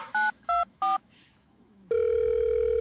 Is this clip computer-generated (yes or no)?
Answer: yes